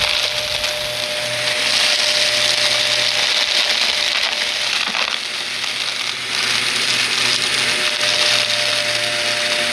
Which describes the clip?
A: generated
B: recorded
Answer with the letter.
B